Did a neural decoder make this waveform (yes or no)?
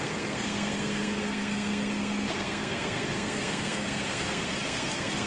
yes